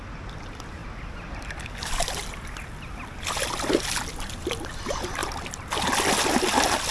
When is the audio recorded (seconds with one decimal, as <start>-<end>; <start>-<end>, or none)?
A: 0.0-6.9